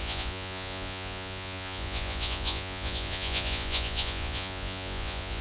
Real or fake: fake